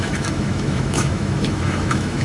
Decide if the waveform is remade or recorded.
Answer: remade